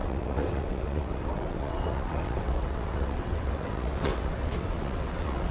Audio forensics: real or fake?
fake